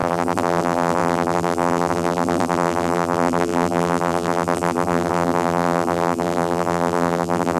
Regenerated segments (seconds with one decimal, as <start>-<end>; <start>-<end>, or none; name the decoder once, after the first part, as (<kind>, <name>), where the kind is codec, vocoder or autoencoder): 0.0-7.6 (vocoder, BigVGAN v2)